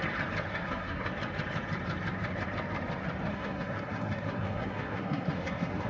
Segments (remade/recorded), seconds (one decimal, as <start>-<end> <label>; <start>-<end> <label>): 0.0-0.5 recorded; 0.5-1.1 remade; 1.1-3.3 recorded; 3.3-5.9 remade